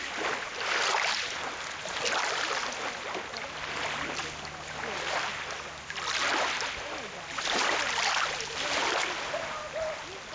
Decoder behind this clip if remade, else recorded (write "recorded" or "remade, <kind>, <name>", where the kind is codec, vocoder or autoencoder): recorded